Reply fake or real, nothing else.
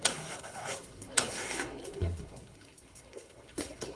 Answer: fake